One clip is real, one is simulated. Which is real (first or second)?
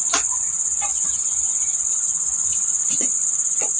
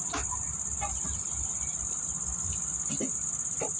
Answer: second